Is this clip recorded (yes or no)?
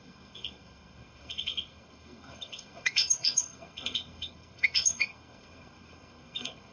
no